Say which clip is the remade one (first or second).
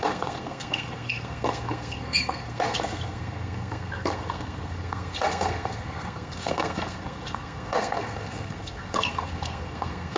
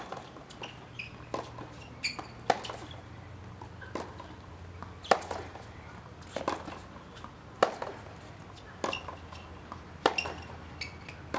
first